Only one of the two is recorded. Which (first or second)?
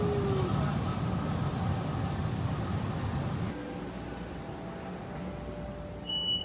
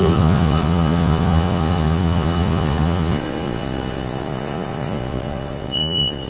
first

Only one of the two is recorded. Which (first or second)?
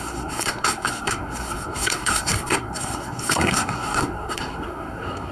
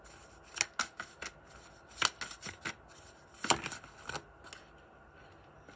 second